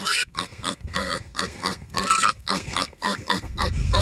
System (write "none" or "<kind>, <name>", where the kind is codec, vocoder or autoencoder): codec, SNAC